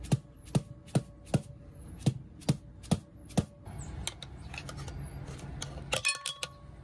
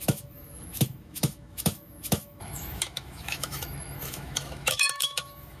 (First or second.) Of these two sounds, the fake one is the second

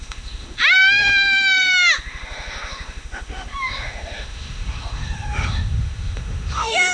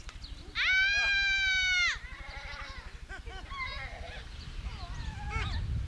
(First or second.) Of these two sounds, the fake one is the first